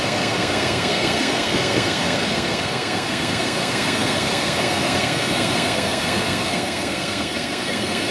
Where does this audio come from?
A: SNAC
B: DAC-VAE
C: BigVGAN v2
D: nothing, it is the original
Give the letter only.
A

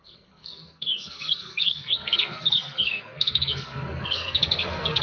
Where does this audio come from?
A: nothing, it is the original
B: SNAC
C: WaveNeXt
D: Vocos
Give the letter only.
B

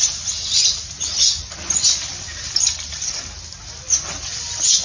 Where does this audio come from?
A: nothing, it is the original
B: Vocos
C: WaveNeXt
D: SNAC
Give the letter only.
A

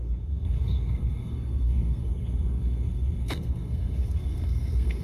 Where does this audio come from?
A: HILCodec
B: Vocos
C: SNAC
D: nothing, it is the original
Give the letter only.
C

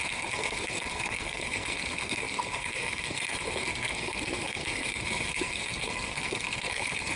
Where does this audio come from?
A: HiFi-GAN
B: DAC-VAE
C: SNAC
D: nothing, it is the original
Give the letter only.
C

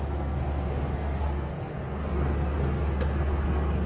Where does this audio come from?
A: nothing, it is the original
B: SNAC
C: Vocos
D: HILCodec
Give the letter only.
B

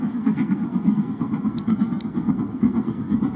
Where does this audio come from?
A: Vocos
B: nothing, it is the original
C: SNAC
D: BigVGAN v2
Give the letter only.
C